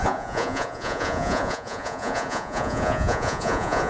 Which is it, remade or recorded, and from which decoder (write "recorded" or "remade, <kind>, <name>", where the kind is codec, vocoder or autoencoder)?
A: remade, vocoder, Vocos